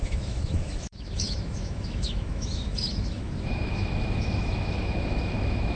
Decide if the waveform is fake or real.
fake